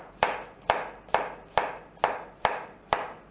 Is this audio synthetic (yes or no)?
no